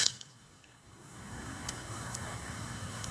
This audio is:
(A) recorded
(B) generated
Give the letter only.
B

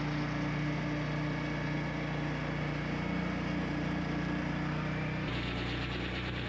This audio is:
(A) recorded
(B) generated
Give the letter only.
A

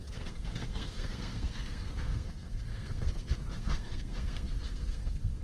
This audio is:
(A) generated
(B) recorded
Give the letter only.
A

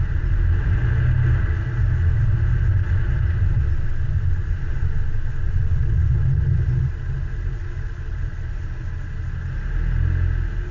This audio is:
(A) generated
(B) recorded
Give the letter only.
B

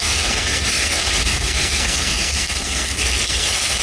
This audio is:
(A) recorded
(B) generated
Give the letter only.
B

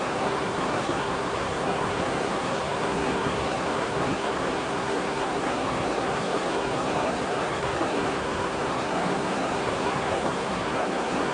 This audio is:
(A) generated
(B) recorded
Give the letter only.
A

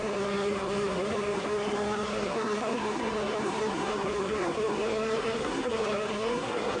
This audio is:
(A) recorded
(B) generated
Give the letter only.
B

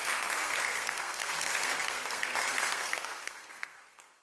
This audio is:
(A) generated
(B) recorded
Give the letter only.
A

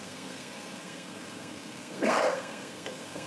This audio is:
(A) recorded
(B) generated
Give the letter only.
B